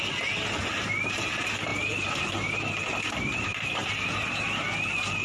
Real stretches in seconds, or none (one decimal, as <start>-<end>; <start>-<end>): 0.0-5.2